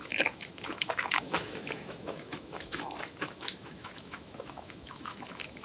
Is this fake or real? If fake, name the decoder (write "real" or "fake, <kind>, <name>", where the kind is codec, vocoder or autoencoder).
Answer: fake, autoencoder, DAC-VAE